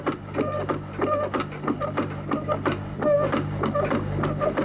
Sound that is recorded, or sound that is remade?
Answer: recorded